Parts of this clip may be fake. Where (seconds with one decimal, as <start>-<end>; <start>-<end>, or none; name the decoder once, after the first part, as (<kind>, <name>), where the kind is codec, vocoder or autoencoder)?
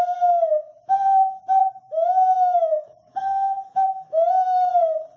1.6-4.7 (autoencoder, DAC-VAE)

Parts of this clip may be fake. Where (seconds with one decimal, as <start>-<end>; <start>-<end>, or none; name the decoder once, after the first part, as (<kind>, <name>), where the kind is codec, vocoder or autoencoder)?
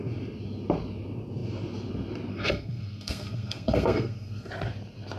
2.3-4.5 (codec, SNAC)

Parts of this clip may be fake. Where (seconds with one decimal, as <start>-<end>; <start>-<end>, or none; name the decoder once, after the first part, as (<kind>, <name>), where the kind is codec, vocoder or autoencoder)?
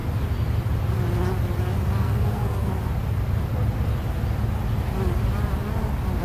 2.0-2.7 (codec, SNAC)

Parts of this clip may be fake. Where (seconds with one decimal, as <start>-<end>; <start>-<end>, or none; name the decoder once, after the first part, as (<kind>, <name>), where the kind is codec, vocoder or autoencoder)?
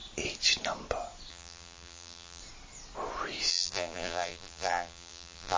1.3-2.4 (vocoder, BigVGAN v2); 3.5-5.6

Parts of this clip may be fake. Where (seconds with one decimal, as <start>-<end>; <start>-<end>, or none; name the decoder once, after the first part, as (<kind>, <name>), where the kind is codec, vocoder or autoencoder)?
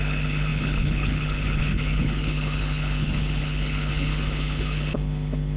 0.0-5.6 (codec, HILCodec)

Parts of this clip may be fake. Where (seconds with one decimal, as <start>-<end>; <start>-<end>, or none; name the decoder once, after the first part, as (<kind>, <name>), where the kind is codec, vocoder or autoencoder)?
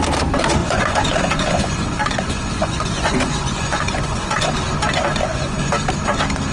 0.6-4.5 (vocoder, Vocos); 5.2-5.7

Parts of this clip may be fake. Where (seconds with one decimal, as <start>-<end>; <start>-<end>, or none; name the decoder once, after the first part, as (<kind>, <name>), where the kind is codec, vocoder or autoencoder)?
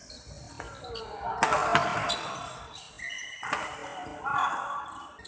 3.2-4.2 (vocoder, BigVGAN v2)